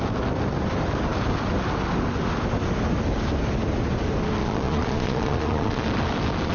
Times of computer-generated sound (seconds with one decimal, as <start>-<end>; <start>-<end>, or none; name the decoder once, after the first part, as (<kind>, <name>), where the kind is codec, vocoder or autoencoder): 4.4-5.8 (vocoder, Vocos)